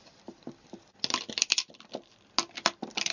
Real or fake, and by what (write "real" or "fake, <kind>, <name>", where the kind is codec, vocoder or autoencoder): real